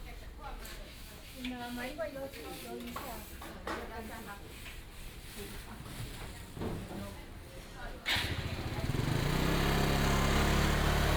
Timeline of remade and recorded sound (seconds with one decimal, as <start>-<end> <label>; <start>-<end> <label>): 0.0-0.7 recorded; 0.7-1.9 remade; 1.9-11.2 recorded